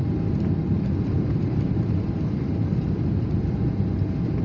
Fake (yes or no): no